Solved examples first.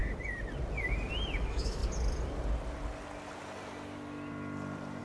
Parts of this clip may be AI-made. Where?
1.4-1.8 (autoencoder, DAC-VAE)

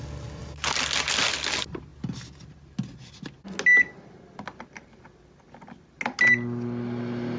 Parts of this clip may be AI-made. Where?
none

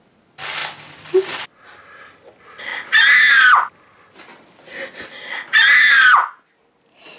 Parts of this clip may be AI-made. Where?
none